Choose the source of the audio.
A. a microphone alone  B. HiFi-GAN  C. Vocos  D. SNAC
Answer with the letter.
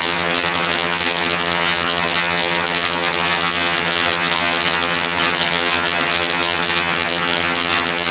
B